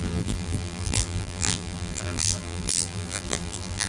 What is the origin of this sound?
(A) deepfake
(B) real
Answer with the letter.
A